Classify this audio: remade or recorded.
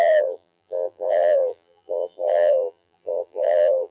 remade